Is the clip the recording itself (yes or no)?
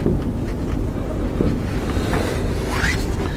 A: yes